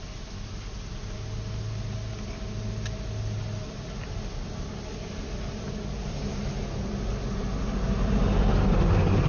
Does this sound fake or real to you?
real